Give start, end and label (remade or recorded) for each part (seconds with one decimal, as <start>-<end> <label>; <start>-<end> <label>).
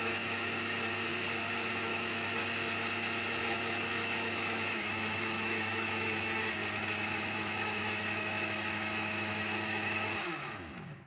0.0-1.1 remade; 1.1-1.7 recorded; 1.7-2.4 remade; 2.4-3.4 recorded; 3.4-6.6 remade; 6.6-7.2 recorded; 7.2-11.1 remade